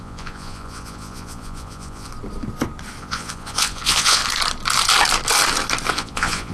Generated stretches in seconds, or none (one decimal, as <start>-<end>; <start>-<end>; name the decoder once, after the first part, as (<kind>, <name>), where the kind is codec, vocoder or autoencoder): 0.0-2.1 (vocoder, Vocos); 3.0-4.2; 5.9-6.5